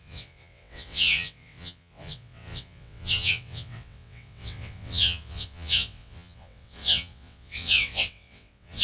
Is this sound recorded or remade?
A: remade